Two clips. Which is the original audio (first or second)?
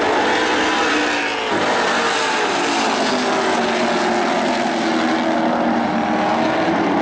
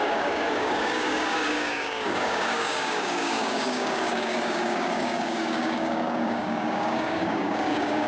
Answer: first